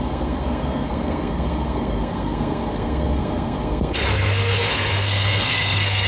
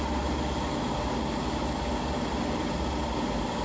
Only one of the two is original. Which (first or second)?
second